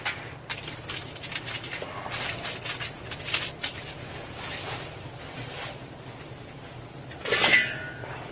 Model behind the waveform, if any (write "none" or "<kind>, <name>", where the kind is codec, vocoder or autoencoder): none